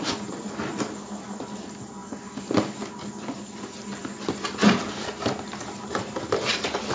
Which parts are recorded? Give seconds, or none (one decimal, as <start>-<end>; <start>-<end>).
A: 0.0-6.9